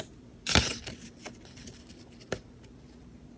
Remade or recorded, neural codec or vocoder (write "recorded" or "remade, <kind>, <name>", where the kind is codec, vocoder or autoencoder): remade, vocoder, BigVGAN v2